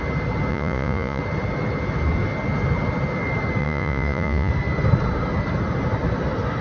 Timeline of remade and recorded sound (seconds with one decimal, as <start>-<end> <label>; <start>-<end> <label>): 0.0-0.5 recorded; 0.5-1.2 remade; 1.2-3.6 recorded; 3.6-4.5 remade; 4.5-6.6 recorded